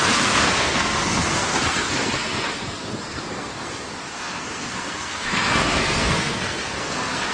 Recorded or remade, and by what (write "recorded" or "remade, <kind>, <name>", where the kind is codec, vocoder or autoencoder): remade, codec, SNAC